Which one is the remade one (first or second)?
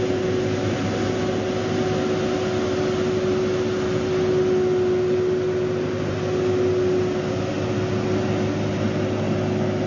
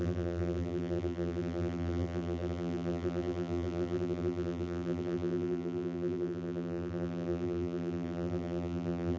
second